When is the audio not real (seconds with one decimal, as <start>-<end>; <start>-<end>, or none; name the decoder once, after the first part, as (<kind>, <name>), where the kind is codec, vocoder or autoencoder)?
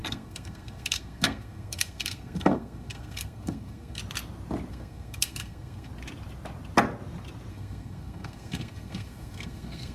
0.0-4.0 (codec, SNAC); 4.7-5.9; 7.5-9.9